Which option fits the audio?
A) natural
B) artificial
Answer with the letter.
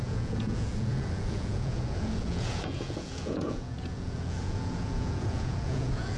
B